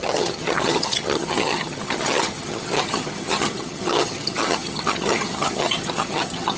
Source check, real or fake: fake